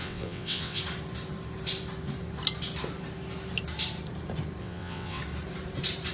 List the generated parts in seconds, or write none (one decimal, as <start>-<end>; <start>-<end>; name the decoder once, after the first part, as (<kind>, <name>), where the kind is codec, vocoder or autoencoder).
0.0-0.8 (vocoder, WaveNeXt); 4.6-5.2